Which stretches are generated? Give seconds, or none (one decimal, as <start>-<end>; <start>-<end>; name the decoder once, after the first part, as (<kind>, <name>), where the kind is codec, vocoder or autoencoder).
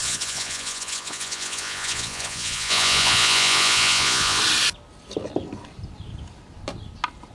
0.0-4.4 (vocoder, Vocos)